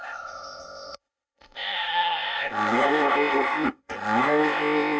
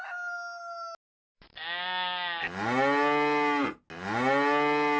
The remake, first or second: first